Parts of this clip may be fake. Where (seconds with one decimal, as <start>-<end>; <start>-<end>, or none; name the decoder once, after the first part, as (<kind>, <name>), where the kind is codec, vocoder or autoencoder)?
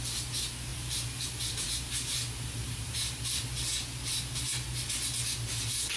0.7-3.5 (vocoder, BigVGAN v2)